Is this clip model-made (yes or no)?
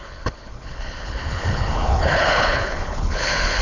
yes